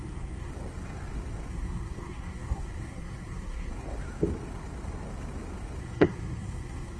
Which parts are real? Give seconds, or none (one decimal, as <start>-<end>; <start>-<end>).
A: 0.5-1.5; 3.7-5.8